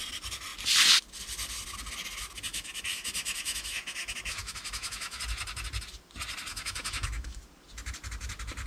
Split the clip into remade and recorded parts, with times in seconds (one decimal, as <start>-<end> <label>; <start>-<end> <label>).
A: 0.0-2.5 recorded; 2.5-5.2 remade; 5.2-6.5 recorded; 6.5-7.4 remade; 7.4-8.7 recorded